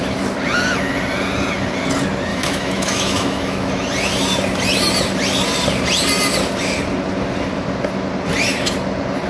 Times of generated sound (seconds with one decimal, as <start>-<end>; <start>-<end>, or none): 2.3-3.7